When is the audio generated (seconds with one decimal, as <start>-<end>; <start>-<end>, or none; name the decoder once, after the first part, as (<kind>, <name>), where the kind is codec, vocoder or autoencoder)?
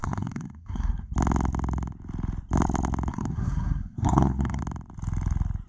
0.0-1.1 (codec, SNAC); 3.1-4.6